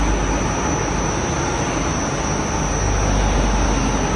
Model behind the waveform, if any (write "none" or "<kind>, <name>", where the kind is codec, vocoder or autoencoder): none